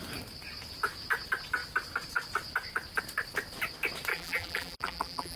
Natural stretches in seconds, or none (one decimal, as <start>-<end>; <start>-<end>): 0.0-4.1